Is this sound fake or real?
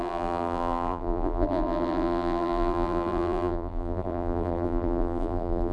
fake